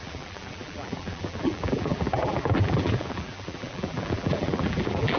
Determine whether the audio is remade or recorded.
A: remade